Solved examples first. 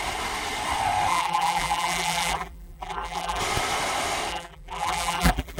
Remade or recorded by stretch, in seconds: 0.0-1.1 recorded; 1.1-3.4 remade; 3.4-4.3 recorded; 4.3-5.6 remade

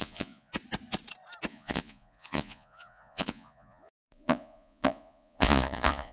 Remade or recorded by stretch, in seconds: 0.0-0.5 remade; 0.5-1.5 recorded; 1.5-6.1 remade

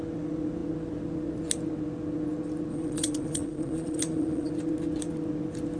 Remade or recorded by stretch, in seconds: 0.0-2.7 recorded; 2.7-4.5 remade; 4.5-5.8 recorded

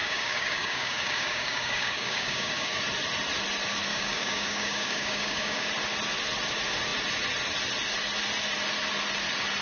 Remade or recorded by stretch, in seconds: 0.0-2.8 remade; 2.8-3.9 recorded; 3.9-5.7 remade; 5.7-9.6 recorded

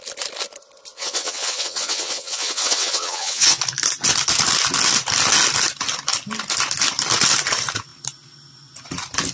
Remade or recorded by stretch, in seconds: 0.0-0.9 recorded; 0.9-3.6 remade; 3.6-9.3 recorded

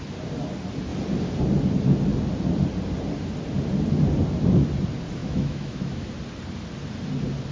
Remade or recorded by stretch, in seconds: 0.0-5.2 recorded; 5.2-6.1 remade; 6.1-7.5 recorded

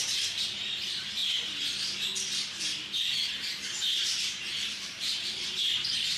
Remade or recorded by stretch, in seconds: 0.0-1.2 remade; 1.2-4.3 recorded; 4.3-6.2 remade

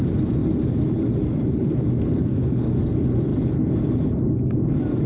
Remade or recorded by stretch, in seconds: 0.0-2.3 recorded; 2.3-2.9 remade; 2.9-5.1 recorded